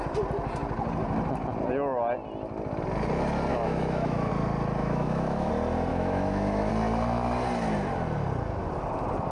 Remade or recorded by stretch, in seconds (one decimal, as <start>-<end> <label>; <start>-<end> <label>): 0.0-3.5 recorded; 3.5-4.3 remade; 4.3-4.8 recorded; 4.8-5.5 remade; 5.5-5.9 recorded; 5.9-6.7 remade; 6.7-9.3 recorded